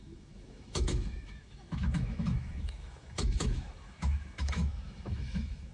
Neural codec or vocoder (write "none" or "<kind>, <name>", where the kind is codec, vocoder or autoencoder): autoencoder, DAC-VAE